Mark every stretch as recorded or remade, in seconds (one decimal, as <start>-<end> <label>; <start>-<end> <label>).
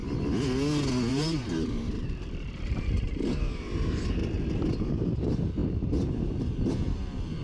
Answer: 0.0-1.1 recorded; 1.1-4.2 remade; 4.2-4.8 recorded; 4.8-7.4 remade